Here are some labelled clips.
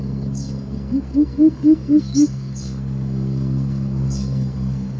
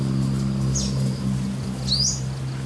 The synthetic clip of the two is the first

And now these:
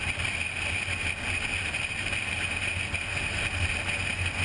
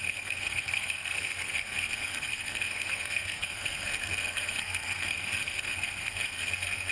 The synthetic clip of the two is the second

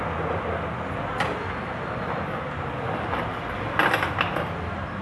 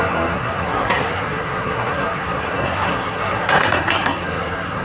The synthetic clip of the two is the second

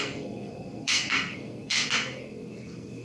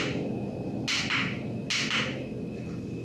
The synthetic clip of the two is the first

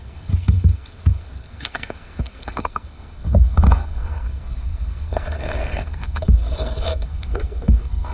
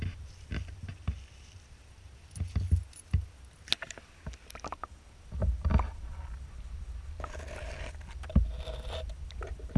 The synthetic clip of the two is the first